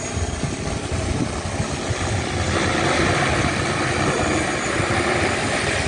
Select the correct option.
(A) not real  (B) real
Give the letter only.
B